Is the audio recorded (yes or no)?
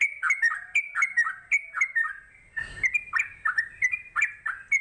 yes